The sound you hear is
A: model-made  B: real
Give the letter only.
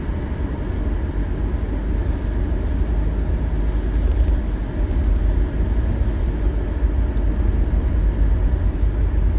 B